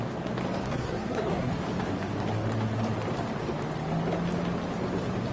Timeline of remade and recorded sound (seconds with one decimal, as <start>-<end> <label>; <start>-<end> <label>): 0.0-0.7 recorded; 0.7-1.5 remade; 1.5-5.3 recorded